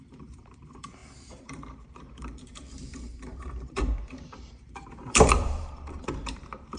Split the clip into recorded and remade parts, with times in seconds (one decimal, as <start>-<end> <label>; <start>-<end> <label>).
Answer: 0.0-6.8 remade